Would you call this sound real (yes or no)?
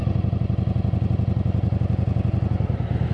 yes